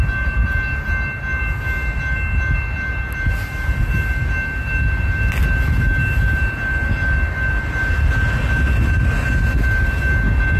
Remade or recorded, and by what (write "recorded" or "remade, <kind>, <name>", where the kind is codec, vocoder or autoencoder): recorded